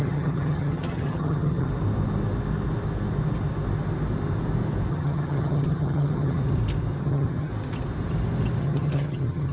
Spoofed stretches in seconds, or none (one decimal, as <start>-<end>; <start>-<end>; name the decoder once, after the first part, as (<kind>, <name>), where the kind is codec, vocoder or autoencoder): 0.0-1.7 (vocoder, HiFi-GAN); 4.9-6.4; 7.0-7.5; 8.6-9.5